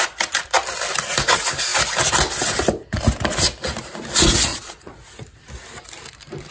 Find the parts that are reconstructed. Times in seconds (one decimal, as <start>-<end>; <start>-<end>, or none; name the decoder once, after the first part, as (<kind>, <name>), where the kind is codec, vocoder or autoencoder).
4.5-5.1 (vocoder, Vocos)